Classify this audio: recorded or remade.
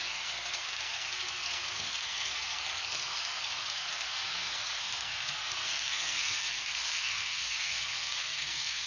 remade